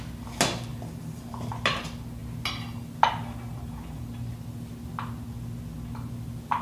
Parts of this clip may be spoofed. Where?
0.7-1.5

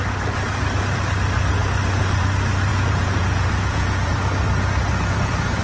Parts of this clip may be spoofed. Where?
2.7-4.1

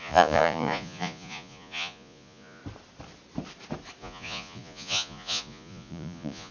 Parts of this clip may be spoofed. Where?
0.0-2.6; 4.0-6.5

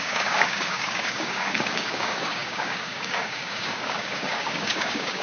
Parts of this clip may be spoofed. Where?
0.0-5.2

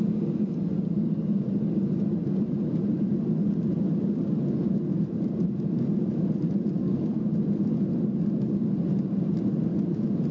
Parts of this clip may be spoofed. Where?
6.8-7.3

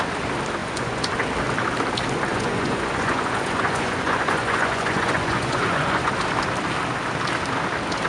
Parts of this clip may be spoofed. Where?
0.6-1.1; 2.3-6.1

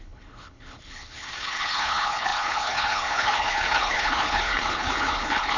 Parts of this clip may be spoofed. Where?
0.0-5.6

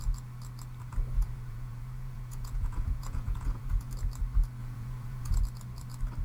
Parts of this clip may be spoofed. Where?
0.9-3.9; 4.6-5.4